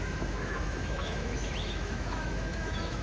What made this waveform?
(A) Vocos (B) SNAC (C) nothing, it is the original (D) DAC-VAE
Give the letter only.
D